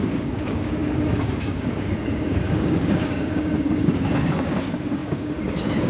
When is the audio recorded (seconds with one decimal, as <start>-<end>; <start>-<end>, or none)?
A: none